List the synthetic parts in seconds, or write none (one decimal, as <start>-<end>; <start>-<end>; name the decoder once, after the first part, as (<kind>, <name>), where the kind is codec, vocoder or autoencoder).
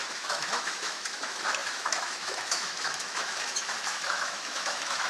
0.0-5.1 (autoencoder, DAC-VAE)